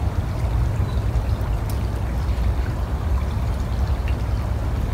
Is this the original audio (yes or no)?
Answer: yes